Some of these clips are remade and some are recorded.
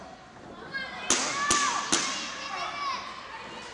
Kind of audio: recorded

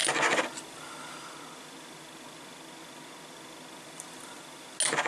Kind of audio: recorded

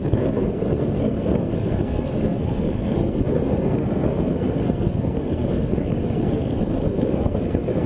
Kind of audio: remade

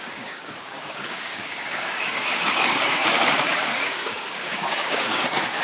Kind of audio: remade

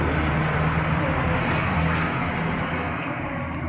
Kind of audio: recorded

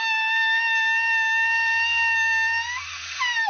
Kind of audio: recorded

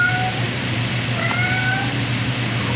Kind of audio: recorded